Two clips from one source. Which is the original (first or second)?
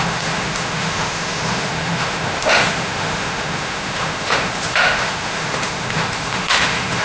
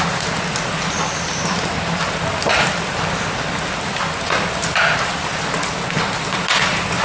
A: second